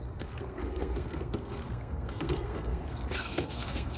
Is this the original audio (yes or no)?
no